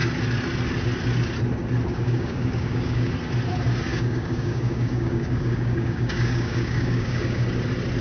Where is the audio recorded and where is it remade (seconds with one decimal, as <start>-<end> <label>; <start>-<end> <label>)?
0.0-1.9 recorded; 1.9-3.1 remade; 3.1-3.9 recorded; 3.9-7.4 remade; 7.4-8.0 recorded